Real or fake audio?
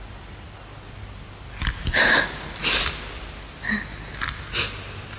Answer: real